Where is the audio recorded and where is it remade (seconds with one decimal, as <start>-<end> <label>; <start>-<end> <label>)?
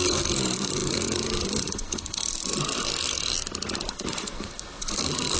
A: 0.0-2.9 remade; 2.9-3.9 recorded; 3.9-5.4 remade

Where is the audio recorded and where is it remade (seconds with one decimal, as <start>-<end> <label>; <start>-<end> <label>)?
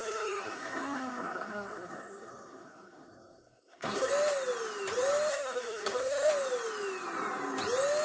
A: 0.0-4.1 remade; 4.1-5.3 recorded; 5.3-6.3 remade; 6.3-8.0 recorded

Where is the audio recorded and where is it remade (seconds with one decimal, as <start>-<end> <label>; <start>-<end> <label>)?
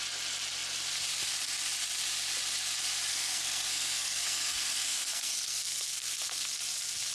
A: 0.0-3.1 recorded; 3.1-6.5 remade; 6.5-7.1 recorded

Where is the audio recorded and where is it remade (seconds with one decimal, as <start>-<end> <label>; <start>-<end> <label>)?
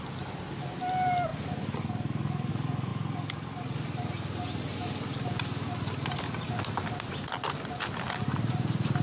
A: 0.0-9.0 recorded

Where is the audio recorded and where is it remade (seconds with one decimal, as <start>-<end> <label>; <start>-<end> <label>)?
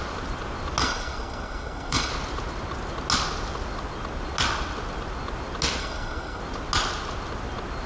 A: 0.0-0.8 recorded; 0.8-2.1 remade; 2.1-5.8 recorded; 5.8-6.4 remade; 6.4-7.9 recorded